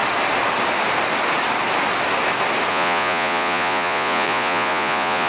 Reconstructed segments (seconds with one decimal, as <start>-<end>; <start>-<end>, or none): 2.7-5.3

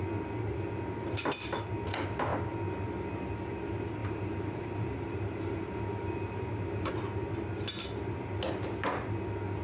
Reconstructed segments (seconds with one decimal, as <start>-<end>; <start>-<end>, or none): 4.0-6.9

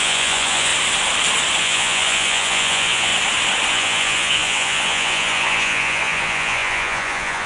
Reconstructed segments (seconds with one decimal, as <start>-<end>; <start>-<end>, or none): 0.0-0.7; 1.6-3.1; 3.7-7.5

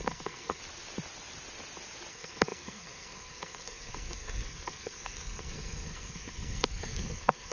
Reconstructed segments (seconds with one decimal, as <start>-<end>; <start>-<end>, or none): 0.0-0.6; 2.1-7.5